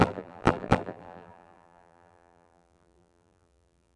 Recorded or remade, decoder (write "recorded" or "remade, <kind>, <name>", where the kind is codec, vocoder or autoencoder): remade, vocoder, BigVGAN v2